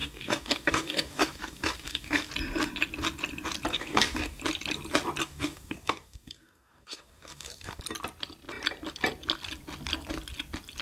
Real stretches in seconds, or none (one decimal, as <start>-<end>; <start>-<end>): 2.3-3.7; 4.4-5.2; 7.8-10.8